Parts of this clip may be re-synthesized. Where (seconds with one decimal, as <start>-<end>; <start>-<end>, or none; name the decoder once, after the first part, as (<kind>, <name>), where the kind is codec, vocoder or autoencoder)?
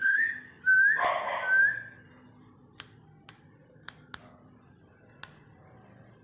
0.0-0.6 (codec, HILCodec)